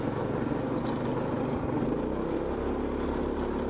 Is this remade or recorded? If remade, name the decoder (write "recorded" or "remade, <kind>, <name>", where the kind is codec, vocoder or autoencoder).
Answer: recorded